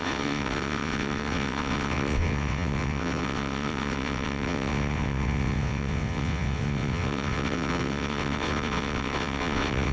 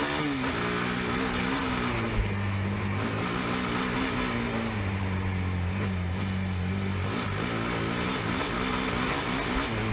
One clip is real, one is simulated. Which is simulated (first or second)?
first